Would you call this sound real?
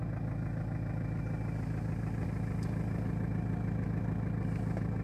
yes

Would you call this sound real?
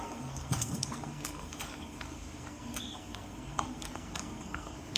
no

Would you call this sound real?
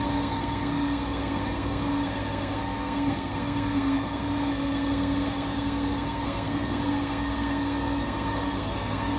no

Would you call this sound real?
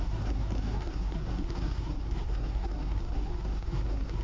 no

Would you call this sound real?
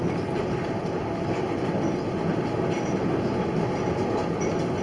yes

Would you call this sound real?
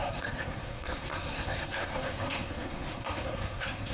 no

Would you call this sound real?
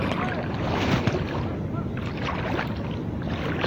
yes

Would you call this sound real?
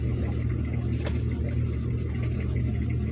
yes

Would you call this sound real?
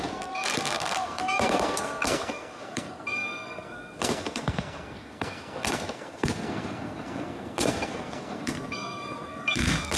no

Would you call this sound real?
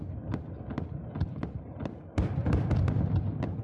yes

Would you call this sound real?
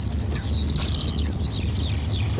yes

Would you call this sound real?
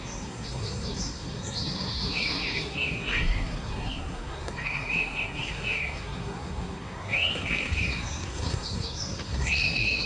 no